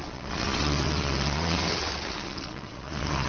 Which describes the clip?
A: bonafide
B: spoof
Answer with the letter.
B